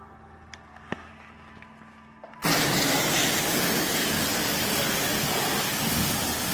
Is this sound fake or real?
real